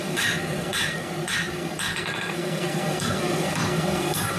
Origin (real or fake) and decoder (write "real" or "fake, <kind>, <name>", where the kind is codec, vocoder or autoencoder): fake, codec, SNAC